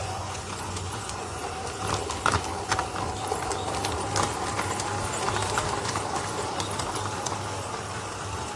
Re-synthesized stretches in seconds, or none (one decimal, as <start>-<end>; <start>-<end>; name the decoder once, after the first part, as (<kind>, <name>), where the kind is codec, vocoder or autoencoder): 0.0-1.4 (vocoder, Vocos)